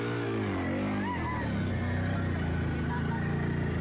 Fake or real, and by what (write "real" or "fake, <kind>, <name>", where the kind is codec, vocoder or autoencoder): real